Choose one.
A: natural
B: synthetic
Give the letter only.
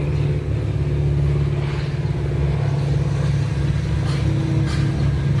A